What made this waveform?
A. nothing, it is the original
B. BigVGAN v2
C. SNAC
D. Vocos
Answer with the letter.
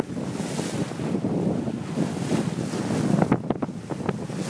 A